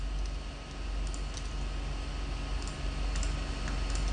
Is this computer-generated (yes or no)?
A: no